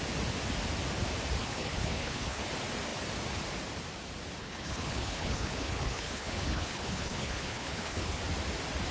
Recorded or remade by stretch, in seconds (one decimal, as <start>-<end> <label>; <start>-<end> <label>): 0.0-1.4 recorded; 1.4-2.5 remade; 2.5-4.4 recorded; 4.4-8.2 remade; 8.2-8.9 recorded